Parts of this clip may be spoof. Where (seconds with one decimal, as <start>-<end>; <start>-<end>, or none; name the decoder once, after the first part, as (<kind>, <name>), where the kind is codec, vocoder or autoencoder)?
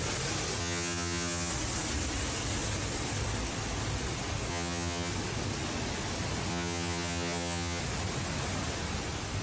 0.6-1.5 (vocoder, HiFi-GAN); 4.5-5.1; 6.5-7.8